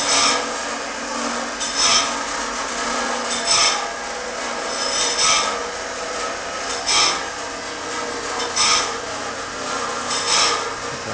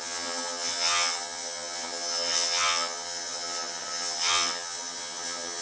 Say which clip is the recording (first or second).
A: first